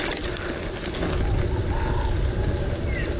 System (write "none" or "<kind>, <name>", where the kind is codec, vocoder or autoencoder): none